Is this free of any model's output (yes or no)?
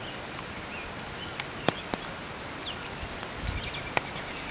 yes